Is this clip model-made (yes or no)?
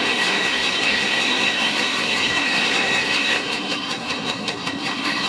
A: yes